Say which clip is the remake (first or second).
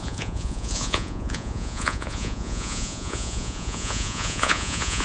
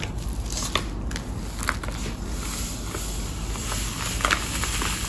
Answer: first